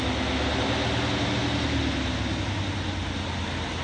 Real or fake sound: real